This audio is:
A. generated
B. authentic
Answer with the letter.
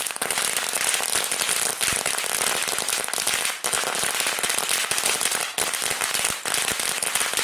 B